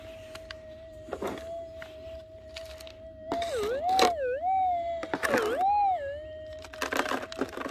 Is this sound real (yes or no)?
yes